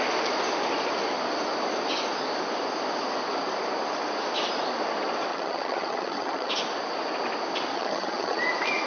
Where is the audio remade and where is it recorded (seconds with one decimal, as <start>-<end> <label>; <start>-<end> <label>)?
0.0-5.3 recorded; 5.3-6.5 remade; 6.5-7.7 recorded; 7.7-8.4 remade; 8.4-8.9 recorded